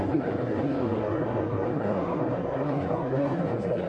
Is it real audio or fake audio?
fake